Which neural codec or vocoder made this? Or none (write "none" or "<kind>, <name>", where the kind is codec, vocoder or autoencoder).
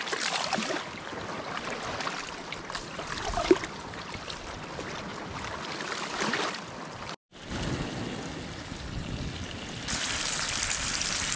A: none